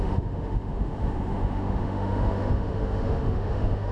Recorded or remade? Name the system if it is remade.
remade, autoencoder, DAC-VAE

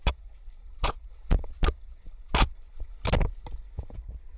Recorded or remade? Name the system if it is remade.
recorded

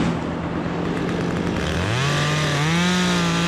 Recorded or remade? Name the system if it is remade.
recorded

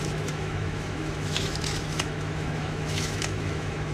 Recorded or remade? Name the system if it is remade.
remade, autoencoder, DAC-VAE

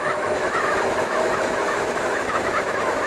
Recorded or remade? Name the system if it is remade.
remade, autoencoder, DAC-VAE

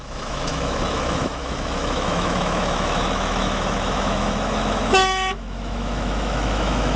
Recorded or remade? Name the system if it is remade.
remade, autoencoder, DAC-VAE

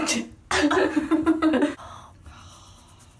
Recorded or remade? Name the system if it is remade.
recorded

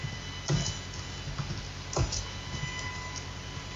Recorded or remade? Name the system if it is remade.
recorded